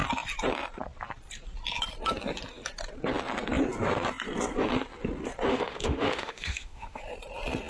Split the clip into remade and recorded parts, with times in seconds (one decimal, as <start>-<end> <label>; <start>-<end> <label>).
0.0-5.5 recorded; 5.5-7.0 remade; 7.0-7.7 recorded